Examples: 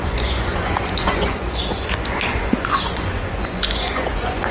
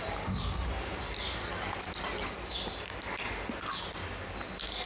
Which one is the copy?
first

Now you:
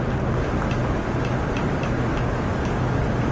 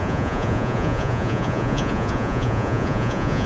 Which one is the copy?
second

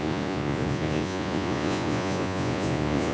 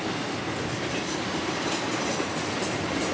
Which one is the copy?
first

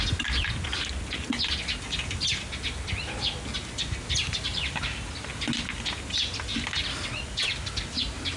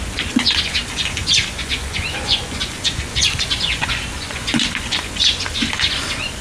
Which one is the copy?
second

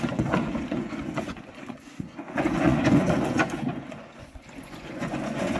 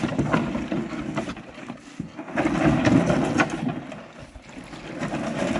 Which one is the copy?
first